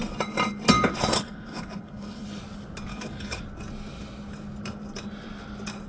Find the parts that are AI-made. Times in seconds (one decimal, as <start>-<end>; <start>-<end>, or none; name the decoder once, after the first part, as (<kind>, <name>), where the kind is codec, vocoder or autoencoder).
1.0-2.4 (codec, HILCodec); 2.9-3.4